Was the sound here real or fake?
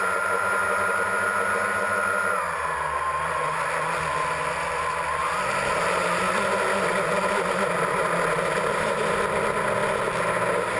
real